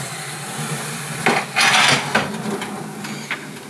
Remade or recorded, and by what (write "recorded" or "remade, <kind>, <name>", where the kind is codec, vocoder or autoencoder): recorded